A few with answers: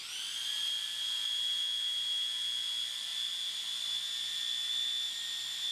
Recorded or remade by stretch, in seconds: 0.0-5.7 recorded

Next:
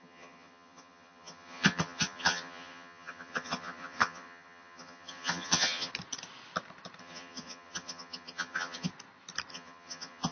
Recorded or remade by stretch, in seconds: 0.0-5.9 remade; 5.9-7.0 recorded; 7.0-8.9 remade; 8.9-9.5 recorded; 9.5-10.3 remade

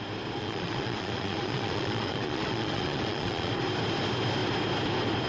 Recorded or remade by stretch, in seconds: 0.0-0.4 recorded; 0.4-3.5 remade; 3.5-5.3 recorded

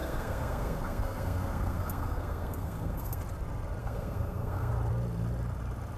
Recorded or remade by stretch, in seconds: 0.0-3.2 remade; 3.2-3.8 recorded; 3.8-4.7 remade; 4.7-6.0 recorded

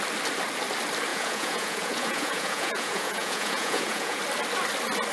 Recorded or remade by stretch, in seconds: 0.0-1.1 recorded; 1.1-4.2 remade; 4.2-5.1 recorded

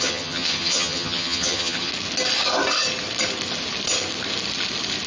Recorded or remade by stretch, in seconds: 0.0-1.9 remade; 1.9-5.1 recorded